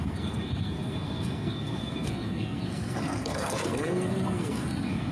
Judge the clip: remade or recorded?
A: remade